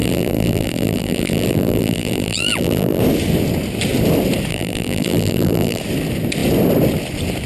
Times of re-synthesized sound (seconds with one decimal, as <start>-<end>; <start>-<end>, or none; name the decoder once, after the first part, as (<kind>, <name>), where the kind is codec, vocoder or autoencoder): 0.0-3.0 (vocoder, BigVGAN v2); 4.5-5.8